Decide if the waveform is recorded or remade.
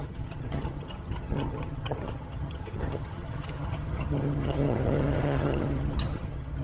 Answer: remade